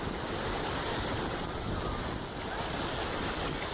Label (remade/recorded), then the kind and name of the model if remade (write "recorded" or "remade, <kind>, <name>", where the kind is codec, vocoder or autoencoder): remade, vocoder, BigVGAN v2